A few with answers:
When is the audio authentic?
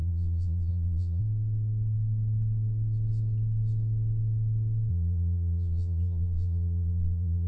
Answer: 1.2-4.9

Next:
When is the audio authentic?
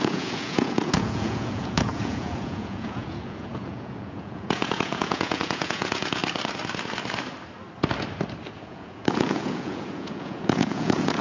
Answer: 6.2-8.5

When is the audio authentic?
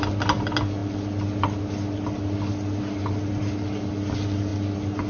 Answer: 0.0-5.1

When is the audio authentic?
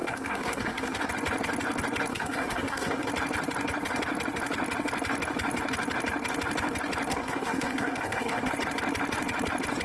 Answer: 1.1-2.1; 3.1-7.1; 8.5-9.8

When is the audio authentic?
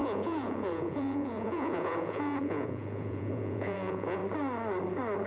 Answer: 4.2-5.3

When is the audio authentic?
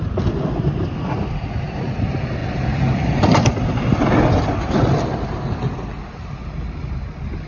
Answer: 0.0-2.4; 5.4-7.5